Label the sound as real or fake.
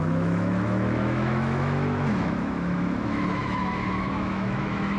fake